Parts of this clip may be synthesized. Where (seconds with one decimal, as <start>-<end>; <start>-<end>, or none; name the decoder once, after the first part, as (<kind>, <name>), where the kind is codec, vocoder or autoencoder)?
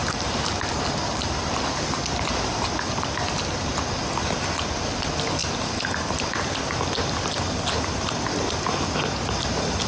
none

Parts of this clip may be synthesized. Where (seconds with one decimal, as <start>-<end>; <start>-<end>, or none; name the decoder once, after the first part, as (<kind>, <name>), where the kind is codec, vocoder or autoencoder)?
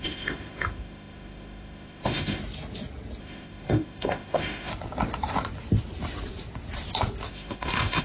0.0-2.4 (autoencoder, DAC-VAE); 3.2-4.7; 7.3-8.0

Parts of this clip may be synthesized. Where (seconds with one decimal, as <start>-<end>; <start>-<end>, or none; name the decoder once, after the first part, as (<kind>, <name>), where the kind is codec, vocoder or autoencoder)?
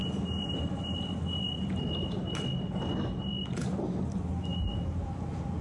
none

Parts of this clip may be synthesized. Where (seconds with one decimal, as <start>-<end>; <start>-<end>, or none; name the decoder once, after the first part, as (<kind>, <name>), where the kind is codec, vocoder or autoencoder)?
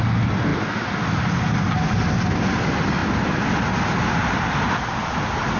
none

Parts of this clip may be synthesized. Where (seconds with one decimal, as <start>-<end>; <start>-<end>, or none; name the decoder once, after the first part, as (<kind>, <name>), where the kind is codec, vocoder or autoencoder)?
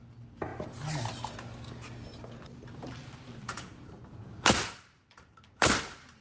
none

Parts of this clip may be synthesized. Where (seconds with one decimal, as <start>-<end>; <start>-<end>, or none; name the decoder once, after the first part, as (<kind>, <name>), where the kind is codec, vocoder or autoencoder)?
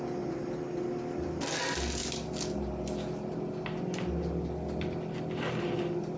none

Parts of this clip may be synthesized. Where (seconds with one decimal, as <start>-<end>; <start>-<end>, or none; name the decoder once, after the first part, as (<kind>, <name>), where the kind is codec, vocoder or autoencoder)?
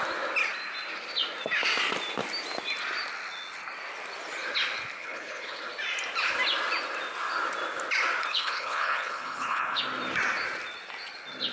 5.0-5.6 (codec, HILCodec); 8.3-9.8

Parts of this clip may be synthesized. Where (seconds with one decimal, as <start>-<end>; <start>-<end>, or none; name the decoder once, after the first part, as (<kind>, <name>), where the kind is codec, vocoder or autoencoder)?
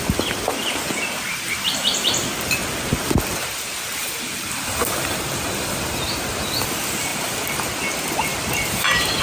4.0-5.8 (vocoder, BigVGAN v2); 7.1-7.6